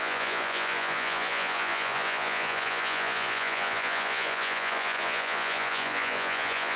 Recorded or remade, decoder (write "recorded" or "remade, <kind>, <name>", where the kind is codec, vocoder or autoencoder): remade, vocoder, Vocos